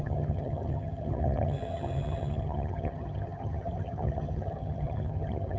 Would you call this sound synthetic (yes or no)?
yes